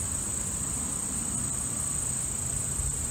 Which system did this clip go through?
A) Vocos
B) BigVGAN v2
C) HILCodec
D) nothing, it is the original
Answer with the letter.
B